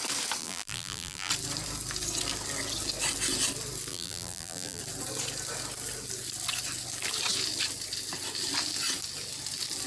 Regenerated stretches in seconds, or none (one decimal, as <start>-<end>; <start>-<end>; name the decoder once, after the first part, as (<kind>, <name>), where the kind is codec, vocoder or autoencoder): 0.4-1.3 (vocoder, BigVGAN v2); 3.9-4.8

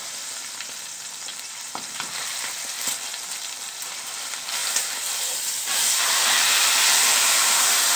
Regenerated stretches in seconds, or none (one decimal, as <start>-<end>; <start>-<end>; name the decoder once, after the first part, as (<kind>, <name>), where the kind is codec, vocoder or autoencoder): 1.3-2.5 (vocoder, BigVGAN v2); 4.6-7.2